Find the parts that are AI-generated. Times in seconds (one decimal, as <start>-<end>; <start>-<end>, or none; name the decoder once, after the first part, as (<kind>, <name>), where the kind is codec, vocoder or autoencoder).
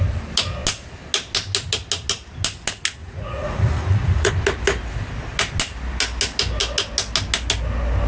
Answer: 3.0-4.3 (vocoder, Vocos)